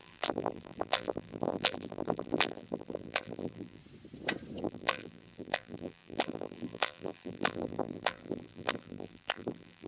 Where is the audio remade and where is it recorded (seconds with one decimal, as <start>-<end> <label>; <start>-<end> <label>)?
0.0-3.8 remade; 3.8-4.6 recorded; 4.6-9.9 remade